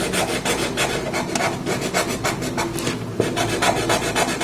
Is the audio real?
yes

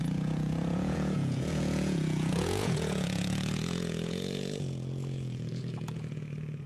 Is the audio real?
no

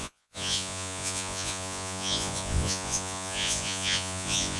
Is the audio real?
no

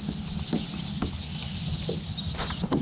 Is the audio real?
yes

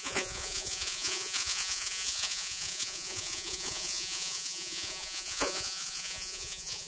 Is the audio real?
no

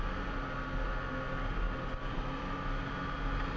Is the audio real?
yes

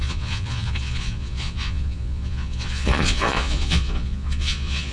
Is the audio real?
no